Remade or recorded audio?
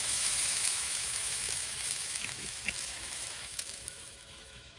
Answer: remade